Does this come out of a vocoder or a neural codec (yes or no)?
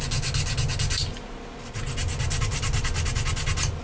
no